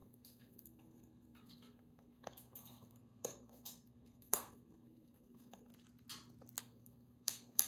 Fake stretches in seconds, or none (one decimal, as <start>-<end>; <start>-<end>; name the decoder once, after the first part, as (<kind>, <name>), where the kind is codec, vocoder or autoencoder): 0.0-5.7 (codec, SNAC); 6.6-7.7